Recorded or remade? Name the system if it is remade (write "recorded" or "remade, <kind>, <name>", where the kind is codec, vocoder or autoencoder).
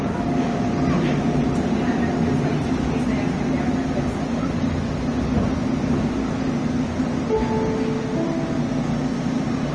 recorded